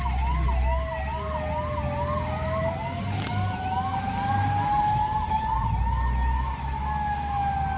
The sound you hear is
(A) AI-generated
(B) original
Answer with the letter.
B